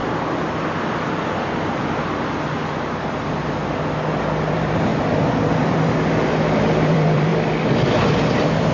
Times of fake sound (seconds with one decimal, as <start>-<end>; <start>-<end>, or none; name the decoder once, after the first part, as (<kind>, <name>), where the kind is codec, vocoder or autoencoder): 4.5-4.9 (vocoder, BigVGAN v2); 6.6-8.7